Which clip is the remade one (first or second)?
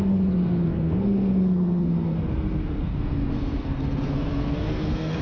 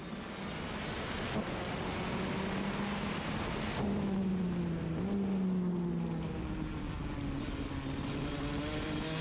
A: first